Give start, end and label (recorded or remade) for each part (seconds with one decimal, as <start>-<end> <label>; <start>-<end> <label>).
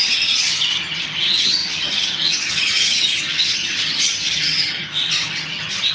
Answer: 0.0-5.9 remade